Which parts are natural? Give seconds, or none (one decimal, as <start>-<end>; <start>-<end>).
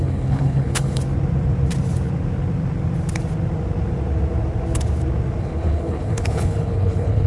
1.0-5.4